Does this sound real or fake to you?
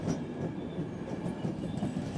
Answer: real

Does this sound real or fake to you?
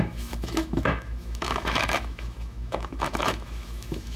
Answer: fake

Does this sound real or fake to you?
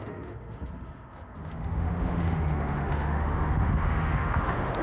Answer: fake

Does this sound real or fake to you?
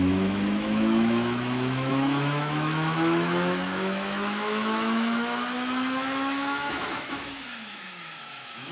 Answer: fake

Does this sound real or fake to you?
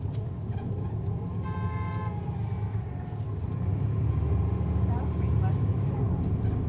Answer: real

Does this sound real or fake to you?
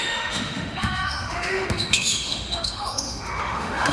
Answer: fake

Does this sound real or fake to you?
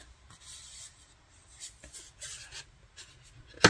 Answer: real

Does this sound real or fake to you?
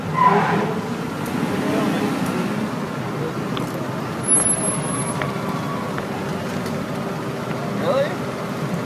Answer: real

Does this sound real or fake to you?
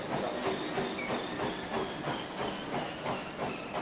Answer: real